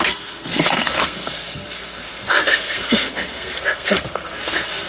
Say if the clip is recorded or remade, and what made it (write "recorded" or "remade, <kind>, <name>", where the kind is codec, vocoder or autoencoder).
remade, codec, SNAC